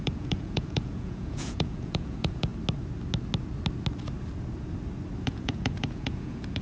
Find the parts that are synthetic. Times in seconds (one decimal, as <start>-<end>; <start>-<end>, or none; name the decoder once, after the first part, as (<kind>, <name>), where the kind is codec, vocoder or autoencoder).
0.0-2.5 (vocoder, Vocos); 5.2-6.6